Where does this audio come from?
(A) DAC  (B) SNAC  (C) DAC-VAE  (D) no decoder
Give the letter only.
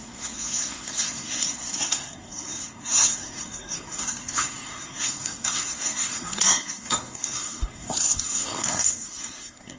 B